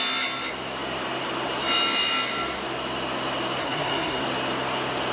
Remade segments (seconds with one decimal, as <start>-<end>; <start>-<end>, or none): 3.6-4.2